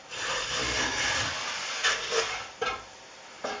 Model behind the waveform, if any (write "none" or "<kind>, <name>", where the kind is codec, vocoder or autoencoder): none